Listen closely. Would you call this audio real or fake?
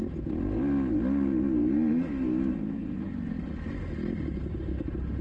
real